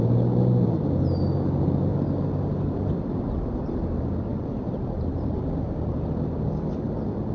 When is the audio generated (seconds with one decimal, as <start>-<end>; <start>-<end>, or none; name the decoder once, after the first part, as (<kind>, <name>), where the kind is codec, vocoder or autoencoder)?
none

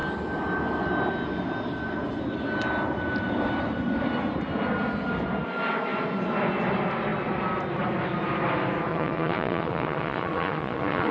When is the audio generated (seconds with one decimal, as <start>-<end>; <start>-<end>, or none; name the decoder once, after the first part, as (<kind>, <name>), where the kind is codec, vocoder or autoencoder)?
8.9-11.1 (vocoder, Vocos)